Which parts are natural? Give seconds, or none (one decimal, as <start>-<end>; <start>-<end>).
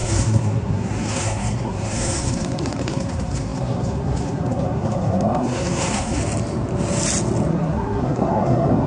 6.2-7.5